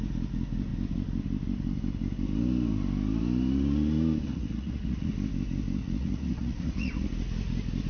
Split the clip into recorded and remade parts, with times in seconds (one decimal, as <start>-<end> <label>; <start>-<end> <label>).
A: 0.0-4.3 recorded; 4.3-5.1 remade; 5.1-5.8 recorded; 5.8-7.1 remade; 7.1-7.9 recorded